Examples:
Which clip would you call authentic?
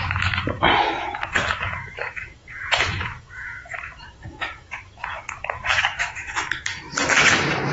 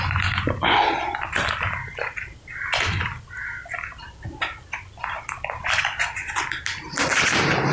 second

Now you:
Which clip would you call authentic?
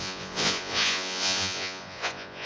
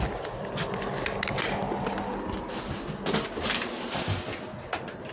second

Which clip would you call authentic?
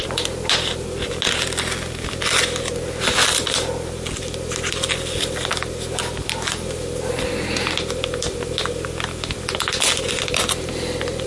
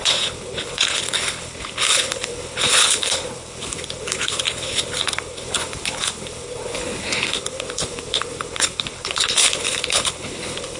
first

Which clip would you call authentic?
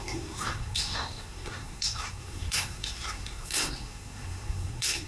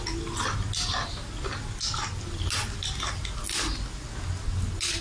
second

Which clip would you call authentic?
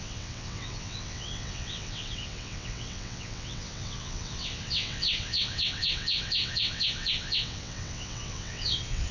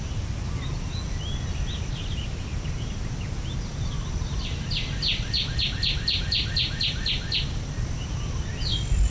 second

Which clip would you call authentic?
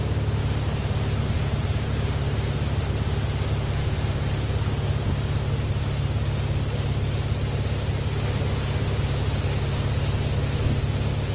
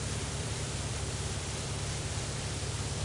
first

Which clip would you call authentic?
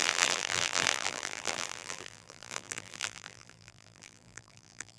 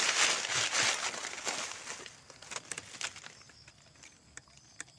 second